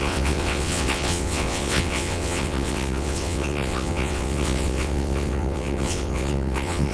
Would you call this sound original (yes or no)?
no